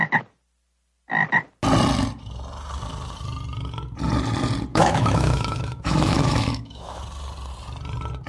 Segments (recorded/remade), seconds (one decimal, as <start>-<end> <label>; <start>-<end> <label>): 0.0-4.7 recorded; 4.7-7.0 remade; 7.0-8.3 recorded